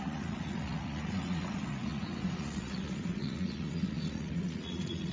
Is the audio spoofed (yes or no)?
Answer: yes